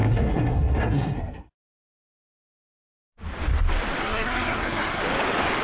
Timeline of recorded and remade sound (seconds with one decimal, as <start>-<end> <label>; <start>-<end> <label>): 0.0-2.3 remade; 2.3-4.0 recorded; 4.0-5.0 remade; 5.0-5.6 recorded